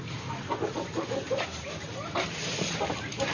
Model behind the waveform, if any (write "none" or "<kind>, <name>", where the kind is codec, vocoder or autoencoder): none